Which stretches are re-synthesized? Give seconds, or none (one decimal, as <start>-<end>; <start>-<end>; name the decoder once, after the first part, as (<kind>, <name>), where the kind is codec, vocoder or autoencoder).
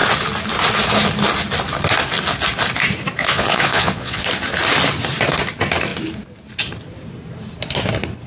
3.2-4.2 (vocoder, Vocos)